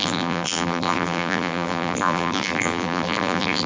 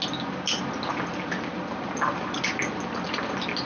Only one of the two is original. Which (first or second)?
second